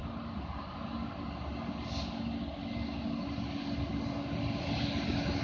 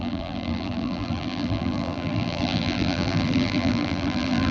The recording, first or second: first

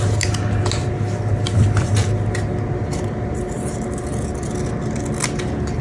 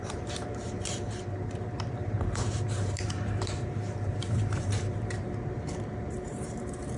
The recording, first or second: first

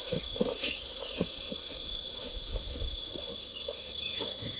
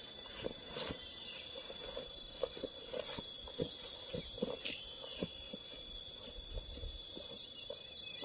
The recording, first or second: second